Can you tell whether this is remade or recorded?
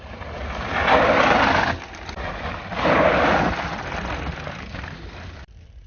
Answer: remade